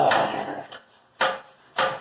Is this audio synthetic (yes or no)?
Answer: no